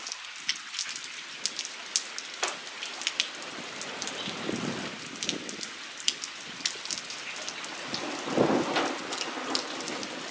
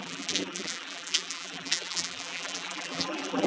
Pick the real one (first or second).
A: first